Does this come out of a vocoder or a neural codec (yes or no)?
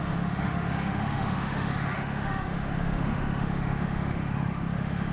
yes